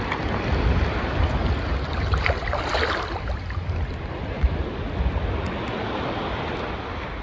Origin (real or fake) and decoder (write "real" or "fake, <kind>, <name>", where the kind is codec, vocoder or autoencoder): real